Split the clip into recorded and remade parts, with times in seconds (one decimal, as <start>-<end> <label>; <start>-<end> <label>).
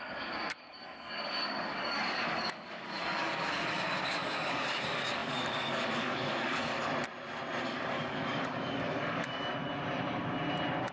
0.0-6.9 remade; 6.9-7.6 recorded; 7.6-9.5 remade; 9.5-10.9 recorded